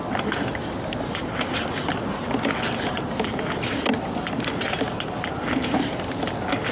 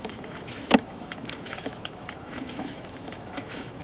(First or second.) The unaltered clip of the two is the first